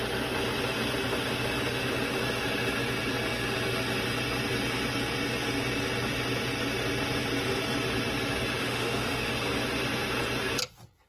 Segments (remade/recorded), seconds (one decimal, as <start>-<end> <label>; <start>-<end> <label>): 0.0-8.6 recorded; 8.6-9.3 remade; 9.3-11.1 recorded